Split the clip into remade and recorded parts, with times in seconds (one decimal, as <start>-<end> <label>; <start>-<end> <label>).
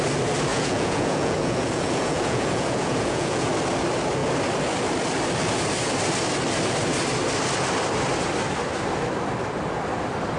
0.0-0.5 recorded; 0.5-3.5 remade; 3.5-10.4 recorded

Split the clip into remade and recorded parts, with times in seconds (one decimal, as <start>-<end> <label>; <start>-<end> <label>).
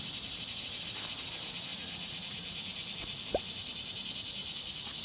0.0-1.7 recorded; 1.7-3.2 remade; 3.2-4.4 recorded; 4.4-5.0 remade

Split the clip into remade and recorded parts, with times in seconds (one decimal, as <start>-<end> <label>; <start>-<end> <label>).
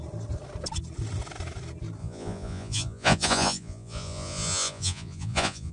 0.0-2.0 recorded; 2.0-5.7 remade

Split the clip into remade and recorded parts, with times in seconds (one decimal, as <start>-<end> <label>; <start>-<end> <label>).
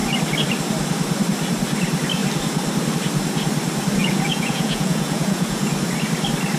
0.0-4.0 recorded; 4.0-5.7 remade; 5.7-6.6 recorded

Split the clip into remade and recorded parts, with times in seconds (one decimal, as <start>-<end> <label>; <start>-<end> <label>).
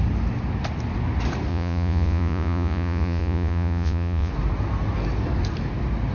0.0-1.5 recorded; 1.5-4.3 remade; 4.3-6.1 recorded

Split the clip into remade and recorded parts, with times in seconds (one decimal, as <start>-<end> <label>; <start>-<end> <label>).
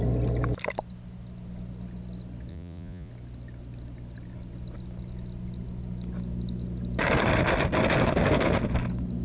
0.0-2.5 recorded; 2.5-3.1 remade; 3.1-9.2 recorded